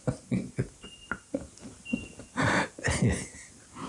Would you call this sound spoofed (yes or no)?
no